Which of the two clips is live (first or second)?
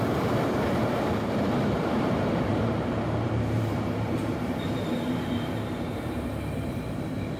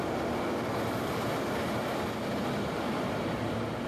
second